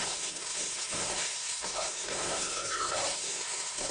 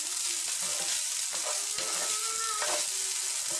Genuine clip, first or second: second